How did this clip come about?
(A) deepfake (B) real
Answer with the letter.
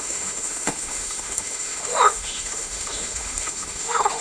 A